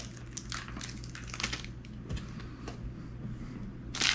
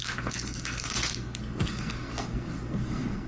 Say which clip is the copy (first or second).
second